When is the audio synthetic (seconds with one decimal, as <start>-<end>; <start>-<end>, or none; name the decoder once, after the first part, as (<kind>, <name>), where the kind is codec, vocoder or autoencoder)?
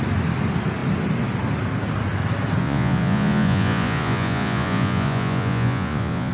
2.6-6.3 (vocoder, Vocos)